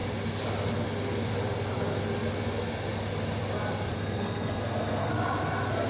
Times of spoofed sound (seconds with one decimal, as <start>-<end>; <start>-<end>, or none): 3.9-5.1